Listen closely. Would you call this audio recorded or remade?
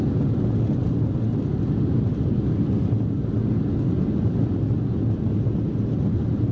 recorded